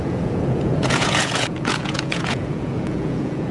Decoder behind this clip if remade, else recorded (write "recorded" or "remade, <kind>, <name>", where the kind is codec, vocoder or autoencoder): remade, vocoder, Vocos